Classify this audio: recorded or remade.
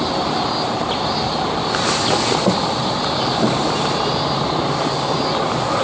recorded